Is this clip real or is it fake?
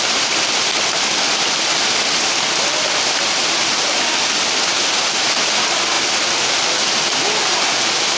real